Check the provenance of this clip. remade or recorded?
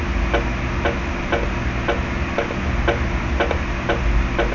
recorded